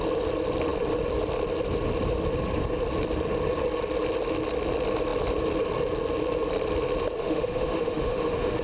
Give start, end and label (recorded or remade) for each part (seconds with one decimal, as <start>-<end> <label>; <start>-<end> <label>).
0.0-7.2 recorded; 7.2-8.6 remade